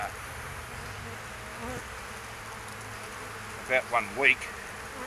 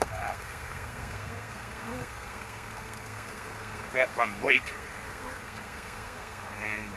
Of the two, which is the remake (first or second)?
second